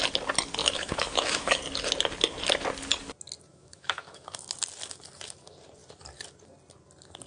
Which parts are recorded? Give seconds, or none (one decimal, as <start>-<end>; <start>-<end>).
0.0-0.6; 1.6-3.5; 4.5-7.3